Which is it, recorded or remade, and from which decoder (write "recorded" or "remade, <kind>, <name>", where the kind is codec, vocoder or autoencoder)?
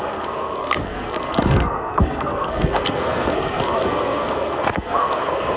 remade, codec, SNAC